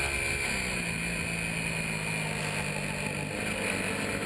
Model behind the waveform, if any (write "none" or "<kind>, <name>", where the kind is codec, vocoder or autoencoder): none